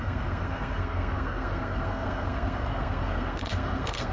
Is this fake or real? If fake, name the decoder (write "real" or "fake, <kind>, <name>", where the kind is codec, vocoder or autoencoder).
fake, codec, SNAC